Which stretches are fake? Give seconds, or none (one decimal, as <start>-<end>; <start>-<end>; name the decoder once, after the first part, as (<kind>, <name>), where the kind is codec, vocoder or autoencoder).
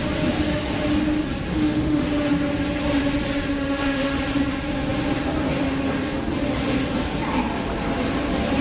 1.5-2.1 (autoencoder, DAC-VAE); 3.5-4.2